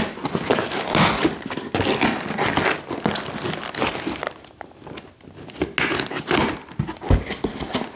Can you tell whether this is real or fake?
real